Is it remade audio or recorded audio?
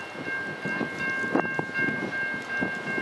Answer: recorded